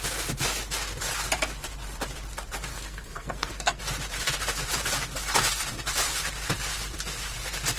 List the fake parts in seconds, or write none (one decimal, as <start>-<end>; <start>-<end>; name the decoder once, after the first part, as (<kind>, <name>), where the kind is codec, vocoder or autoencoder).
2.7-3.8 (codec, SNAC)

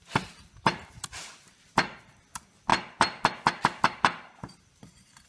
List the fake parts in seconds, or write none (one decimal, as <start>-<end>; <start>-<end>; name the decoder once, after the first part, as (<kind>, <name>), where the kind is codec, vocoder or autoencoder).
none

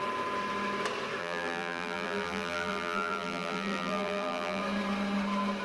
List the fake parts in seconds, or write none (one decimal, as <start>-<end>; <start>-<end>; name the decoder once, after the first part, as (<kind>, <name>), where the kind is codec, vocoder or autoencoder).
1.2-4.6 (vocoder, BigVGAN v2)

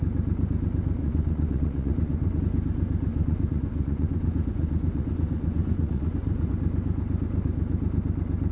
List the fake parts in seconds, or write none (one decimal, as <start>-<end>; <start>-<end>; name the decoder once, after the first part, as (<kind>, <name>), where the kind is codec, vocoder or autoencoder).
1.0-2.4 (vocoder, Vocos); 3.1-6.5

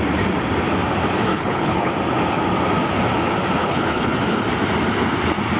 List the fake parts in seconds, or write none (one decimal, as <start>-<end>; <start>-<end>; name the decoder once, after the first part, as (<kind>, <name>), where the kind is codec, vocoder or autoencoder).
1.3-1.9 (codec, HILCodec); 3.6-4.2